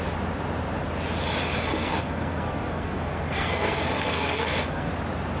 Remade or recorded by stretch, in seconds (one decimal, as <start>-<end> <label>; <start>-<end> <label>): 0.0-1.7 recorded; 1.7-4.9 remade; 4.9-5.4 recorded